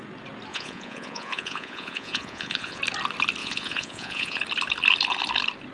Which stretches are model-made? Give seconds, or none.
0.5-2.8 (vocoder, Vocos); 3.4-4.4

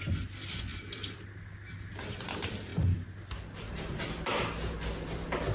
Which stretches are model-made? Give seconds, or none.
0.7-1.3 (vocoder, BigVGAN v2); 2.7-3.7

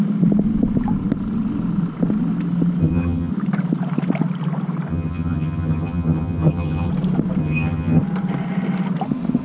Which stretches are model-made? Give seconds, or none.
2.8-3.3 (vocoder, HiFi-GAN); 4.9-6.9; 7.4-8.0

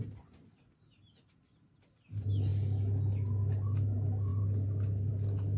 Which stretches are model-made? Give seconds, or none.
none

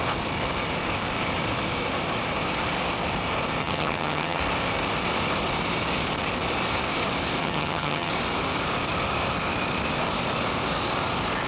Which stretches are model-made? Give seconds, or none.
3.6-4.4 (vocoder, HiFi-GAN); 7.4-8.1

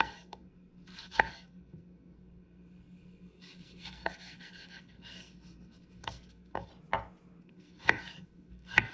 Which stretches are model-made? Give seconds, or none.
0.0-6.7 (codec, SNAC); 7.4-8.9